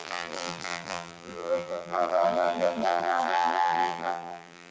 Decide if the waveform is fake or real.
fake